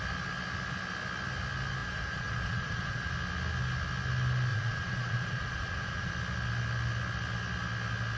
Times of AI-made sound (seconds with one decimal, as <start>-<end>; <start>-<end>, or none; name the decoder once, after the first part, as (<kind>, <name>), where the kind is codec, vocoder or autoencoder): 1.8-3.1 (vocoder, Vocos); 4.5-6.1